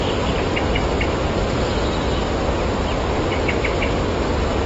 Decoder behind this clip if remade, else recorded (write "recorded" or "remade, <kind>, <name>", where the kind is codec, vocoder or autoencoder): recorded